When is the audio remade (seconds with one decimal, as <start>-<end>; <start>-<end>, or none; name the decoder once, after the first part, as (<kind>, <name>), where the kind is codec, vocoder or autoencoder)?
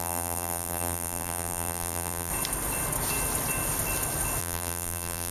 0.0-2.3 (vocoder, BigVGAN v2); 4.4-5.3